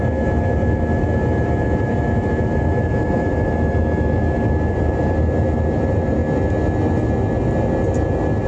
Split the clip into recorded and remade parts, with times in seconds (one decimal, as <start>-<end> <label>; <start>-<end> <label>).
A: 0.0-6.2 remade; 6.2-8.5 recorded